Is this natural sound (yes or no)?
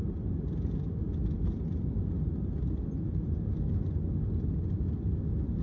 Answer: yes